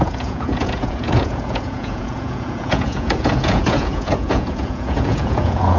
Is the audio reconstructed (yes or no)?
yes